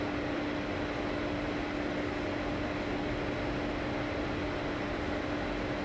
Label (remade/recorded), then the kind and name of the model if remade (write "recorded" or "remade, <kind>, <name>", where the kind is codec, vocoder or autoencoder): recorded